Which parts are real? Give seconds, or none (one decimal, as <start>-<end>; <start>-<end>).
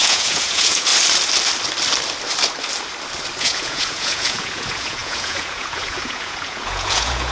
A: 0.9-3.4